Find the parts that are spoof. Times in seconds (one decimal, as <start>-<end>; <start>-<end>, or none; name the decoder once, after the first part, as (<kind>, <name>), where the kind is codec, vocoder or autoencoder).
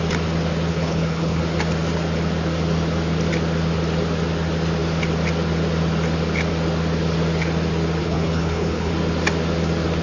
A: 0.7-1.4 (codec, HILCodec); 8.0-8.9